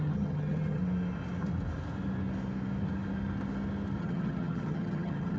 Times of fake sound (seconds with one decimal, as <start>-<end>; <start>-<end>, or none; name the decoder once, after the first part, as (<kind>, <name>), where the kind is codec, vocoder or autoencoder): 0.0-0.8 (vocoder, HiFi-GAN); 4.0-5.4